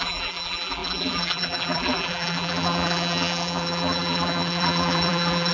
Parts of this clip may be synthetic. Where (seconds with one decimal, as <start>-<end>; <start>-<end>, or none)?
0.0-5.5